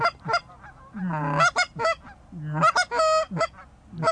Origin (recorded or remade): recorded